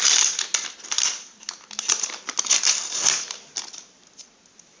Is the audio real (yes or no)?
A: yes